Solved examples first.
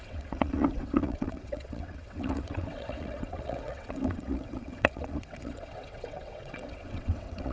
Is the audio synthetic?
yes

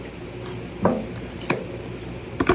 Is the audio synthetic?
no